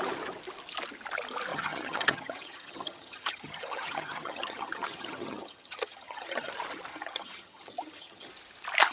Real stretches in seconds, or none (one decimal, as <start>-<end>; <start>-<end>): 0.0-1.5; 6.5-6.9; 8.3-8.9